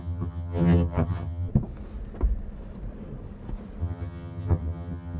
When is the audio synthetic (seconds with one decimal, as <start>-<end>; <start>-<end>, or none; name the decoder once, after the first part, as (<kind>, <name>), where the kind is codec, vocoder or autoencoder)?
0.0-1.5 (vocoder, HiFi-GAN); 3.8-5.2